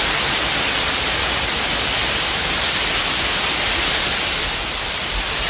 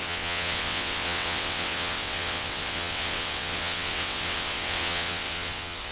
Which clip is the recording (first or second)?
first